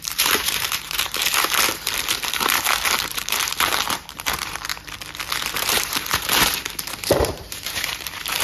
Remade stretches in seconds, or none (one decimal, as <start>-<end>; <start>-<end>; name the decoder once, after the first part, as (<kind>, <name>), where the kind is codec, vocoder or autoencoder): 0.0-1.2 (vocoder, BigVGAN v2); 3.0-4.7; 5.4-8.4